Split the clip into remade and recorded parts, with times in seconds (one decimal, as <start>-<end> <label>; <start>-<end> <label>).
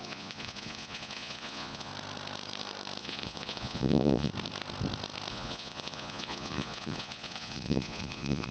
0.0-1.9 remade; 1.9-3.0 recorded; 3.0-4.3 remade; 4.3-5.3 recorded; 5.3-8.5 remade